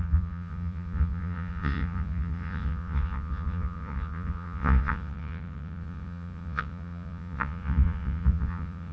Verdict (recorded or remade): remade